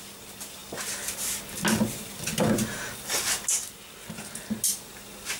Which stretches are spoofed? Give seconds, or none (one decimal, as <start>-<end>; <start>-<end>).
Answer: none